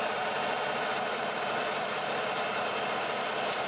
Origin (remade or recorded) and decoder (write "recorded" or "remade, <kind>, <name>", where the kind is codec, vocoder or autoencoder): remade, vocoder, BigVGAN v2